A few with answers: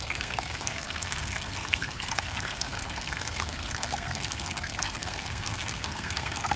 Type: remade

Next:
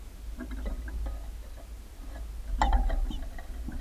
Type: recorded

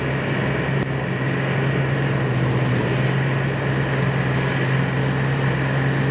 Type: recorded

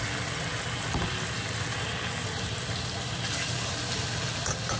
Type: recorded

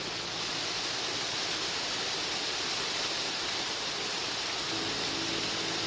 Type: recorded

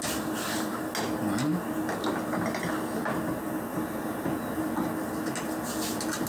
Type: recorded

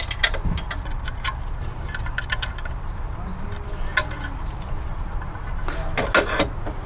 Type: recorded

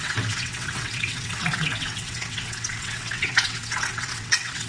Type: remade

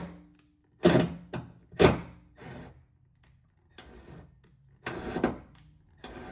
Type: recorded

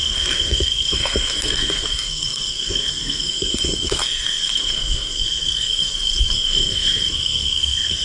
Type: remade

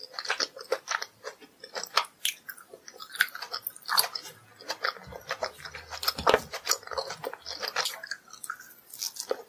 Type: recorded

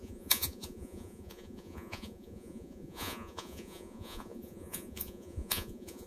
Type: remade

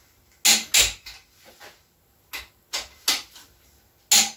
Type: recorded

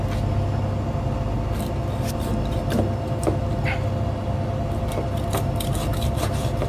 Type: recorded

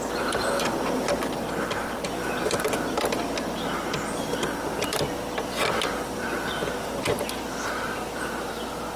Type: recorded